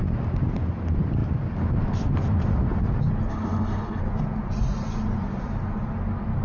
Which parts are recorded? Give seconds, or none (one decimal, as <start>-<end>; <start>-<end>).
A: 0.0-3.3; 4.0-6.4